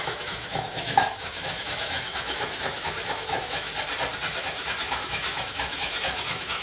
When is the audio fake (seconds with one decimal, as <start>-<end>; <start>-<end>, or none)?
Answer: 0.0-3.7; 4.4-6.6